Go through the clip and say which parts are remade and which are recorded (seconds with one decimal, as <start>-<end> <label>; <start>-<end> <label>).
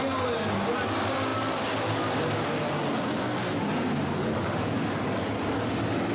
0.0-6.1 recorded